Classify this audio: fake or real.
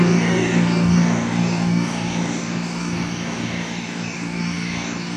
fake